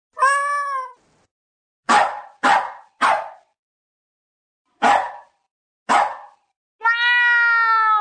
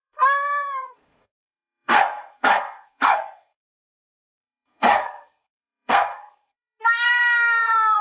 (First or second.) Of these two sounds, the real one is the first